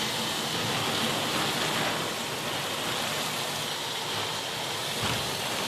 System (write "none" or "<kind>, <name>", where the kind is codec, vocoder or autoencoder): none